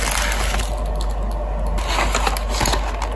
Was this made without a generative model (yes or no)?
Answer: yes